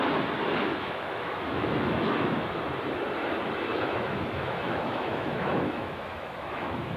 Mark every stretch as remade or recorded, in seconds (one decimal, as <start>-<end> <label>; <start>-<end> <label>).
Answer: 0.0-0.7 recorded; 0.7-2.6 remade; 2.6-3.7 recorded; 3.7-7.0 remade